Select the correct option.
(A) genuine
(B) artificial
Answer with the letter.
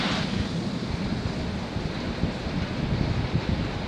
A